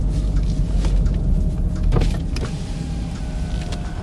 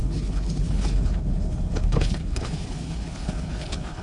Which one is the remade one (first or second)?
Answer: second